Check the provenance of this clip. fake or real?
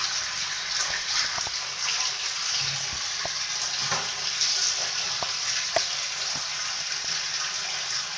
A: real